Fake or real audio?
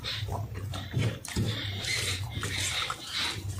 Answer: fake